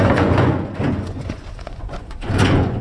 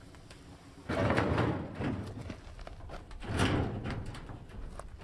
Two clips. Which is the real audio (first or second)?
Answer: second